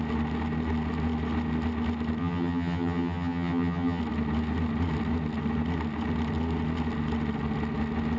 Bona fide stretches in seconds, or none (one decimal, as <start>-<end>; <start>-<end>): 0.0-2.2; 4.0-8.2

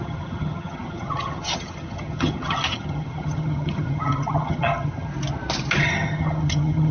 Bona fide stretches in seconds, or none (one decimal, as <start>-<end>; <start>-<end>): 5.1-5.8

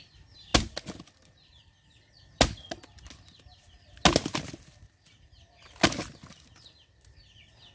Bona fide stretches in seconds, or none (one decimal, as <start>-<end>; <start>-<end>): 0.0-7.7

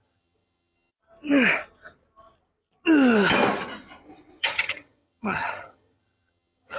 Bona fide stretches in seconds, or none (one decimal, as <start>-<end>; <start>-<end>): 0.9-4.4

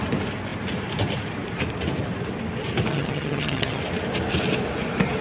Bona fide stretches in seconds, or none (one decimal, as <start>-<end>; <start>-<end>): 0.0-2.9; 3.8-5.2

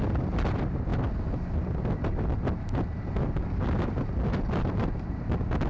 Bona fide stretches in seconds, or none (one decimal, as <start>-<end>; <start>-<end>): 0.0-5.7

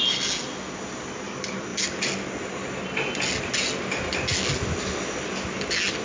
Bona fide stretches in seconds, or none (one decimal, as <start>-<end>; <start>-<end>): 0.0-6.0